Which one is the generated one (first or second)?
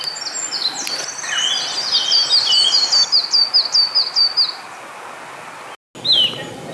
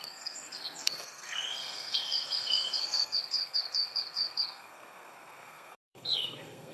second